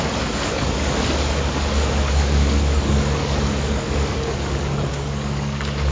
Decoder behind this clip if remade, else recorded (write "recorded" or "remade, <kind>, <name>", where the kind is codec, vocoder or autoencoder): remade, codec, DAC